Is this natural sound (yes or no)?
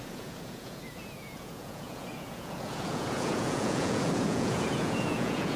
no